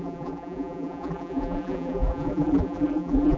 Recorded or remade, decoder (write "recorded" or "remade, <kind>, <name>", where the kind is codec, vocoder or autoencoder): remade, vocoder, BigVGAN v2